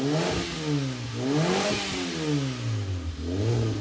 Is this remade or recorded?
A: recorded